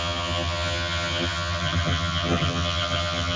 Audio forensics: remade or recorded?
remade